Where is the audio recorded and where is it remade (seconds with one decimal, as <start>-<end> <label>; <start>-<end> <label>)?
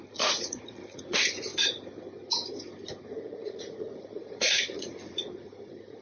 0.0-1.5 remade; 1.5-3.0 recorded; 3.0-6.0 remade